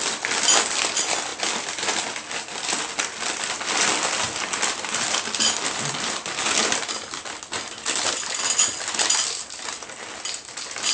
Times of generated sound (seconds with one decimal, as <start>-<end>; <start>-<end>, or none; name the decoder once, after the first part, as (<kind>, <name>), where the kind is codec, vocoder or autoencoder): none